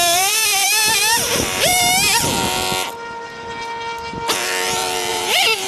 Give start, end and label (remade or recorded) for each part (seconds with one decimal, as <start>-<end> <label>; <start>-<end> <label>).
0.0-1.7 remade; 1.7-5.1 recorded; 5.1-5.7 remade